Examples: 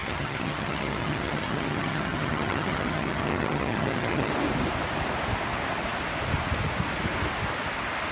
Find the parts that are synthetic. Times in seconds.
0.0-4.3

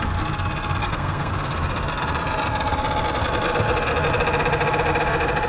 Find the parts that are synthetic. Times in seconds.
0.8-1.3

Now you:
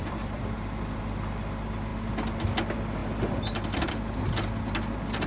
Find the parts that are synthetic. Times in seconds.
0.0-1.0; 1.9-2.4; 3.0-3.9